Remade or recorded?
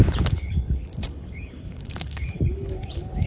remade